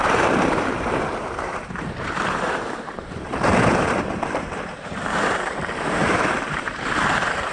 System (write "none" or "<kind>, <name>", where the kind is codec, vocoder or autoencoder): vocoder, BigVGAN v2